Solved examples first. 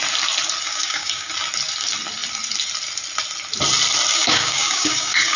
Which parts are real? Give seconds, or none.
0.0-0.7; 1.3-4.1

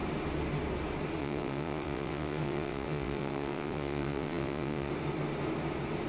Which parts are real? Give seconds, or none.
0.0-1.2; 4.9-6.1

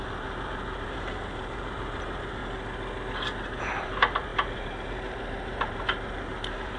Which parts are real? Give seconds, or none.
2.4-3.6

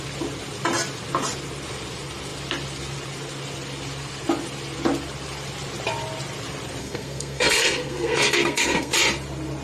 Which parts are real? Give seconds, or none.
0.0-6.8; 8.9-9.6

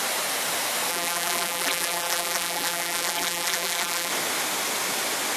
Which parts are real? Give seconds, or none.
0.0-0.9; 4.1-5.4

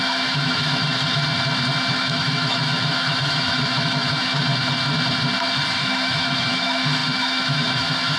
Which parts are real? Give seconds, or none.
1.2-1.9; 4.5-5.7

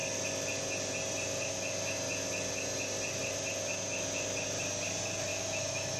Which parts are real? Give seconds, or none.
0.0-5.3